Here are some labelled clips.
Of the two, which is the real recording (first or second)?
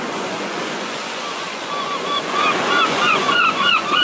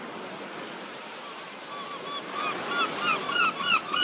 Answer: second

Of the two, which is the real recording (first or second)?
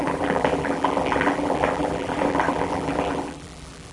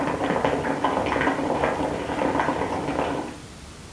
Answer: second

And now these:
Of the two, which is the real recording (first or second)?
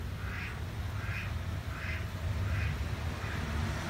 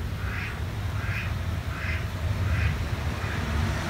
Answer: first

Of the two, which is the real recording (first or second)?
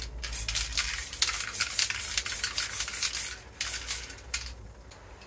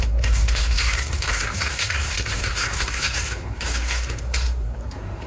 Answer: first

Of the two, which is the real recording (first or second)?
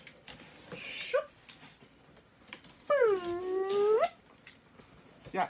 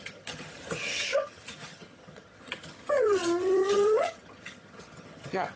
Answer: first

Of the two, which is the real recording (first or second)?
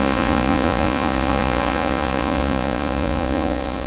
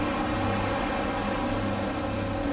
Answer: second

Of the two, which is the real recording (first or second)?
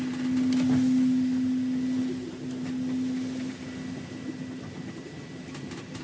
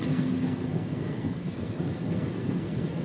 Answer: first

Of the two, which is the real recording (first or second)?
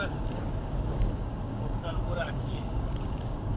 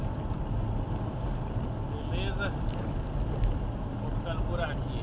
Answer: second